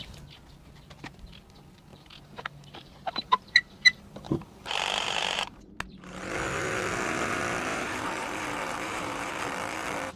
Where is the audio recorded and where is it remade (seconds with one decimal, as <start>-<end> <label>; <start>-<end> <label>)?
0.0-1.9 recorded; 1.9-5.8 remade; 5.8-7.7 recorded; 7.7-9.3 remade; 9.3-10.2 recorded